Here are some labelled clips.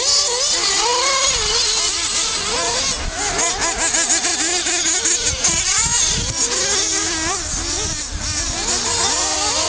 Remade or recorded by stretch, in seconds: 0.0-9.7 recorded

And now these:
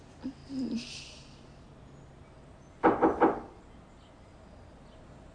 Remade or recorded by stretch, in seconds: 0.0-5.3 recorded

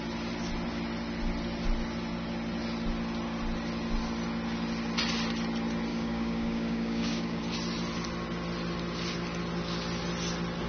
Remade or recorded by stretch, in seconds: 0.0-5.9 recorded; 5.9-7.4 remade; 7.4-10.7 recorded

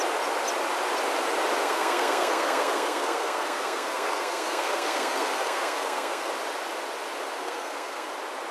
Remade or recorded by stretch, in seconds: 0.0-1.6 recorded; 1.6-6.3 remade; 6.3-7.4 recorded; 7.4-8.1 remade; 8.1-8.5 recorded

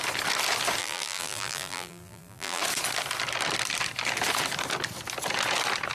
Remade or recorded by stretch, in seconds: 0.0-0.8 recorded; 0.8-2.6 remade; 2.6-5.9 recorded